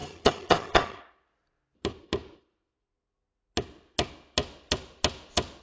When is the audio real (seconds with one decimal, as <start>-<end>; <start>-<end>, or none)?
1.0-5.6